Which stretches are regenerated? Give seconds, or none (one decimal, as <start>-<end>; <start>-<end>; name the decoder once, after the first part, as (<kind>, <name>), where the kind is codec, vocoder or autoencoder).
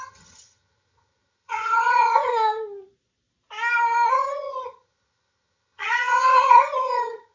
0.0-2.3 (vocoder, HiFi-GAN); 4.1-7.3